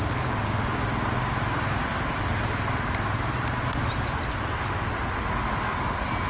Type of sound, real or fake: real